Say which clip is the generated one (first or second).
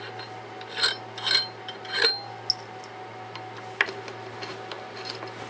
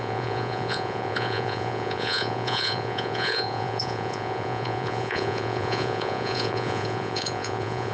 second